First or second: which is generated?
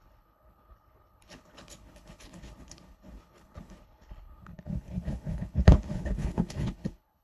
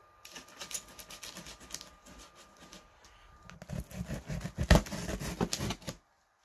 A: first